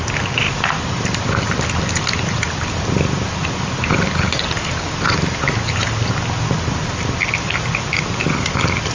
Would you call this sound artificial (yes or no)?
no